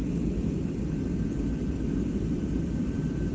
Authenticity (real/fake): real